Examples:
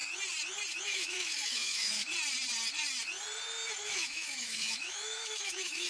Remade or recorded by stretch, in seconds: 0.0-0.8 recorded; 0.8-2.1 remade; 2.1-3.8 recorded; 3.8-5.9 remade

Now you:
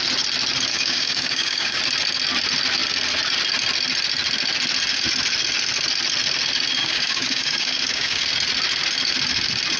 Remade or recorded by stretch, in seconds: 0.0-0.7 recorded; 0.7-1.8 remade; 1.8-6.8 recorded; 6.8-8.2 remade; 8.2-9.8 recorded

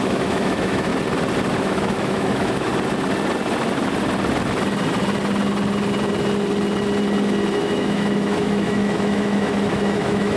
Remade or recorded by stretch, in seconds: 0.0-0.9 remade; 0.9-1.6 recorded; 1.6-2.7 remade; 2.7-7.5 recorded; 7.5-10.4 remade

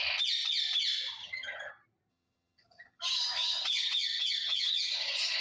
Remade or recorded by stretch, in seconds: 0.0-1.2 recorded; 1.2-1.7 remade; 1.7-2.1 recorded; 2.1-5.4 remade

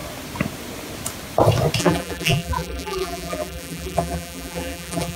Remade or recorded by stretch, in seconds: 0.0-1.8 recorded; 1.8-5.2 remade

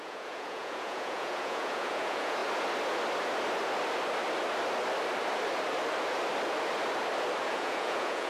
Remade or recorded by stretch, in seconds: 0.0-2.4 remade; 2.4-7.4 recorded; 7.4-8.3 remade